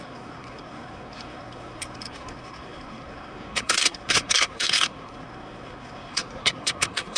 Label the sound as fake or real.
fake